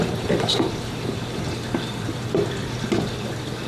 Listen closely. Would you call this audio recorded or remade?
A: remade